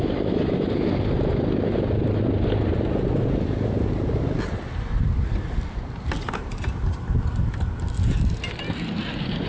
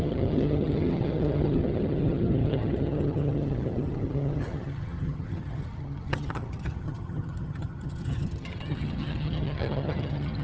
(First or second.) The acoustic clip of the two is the first